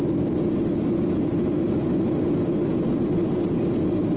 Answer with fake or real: real